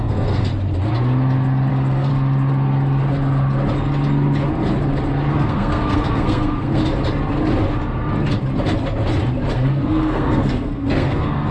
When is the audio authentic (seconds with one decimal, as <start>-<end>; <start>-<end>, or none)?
0.5-1.7; 2.1-5.3; 6.8-9.5